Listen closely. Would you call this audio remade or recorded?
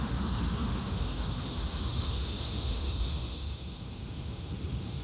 remade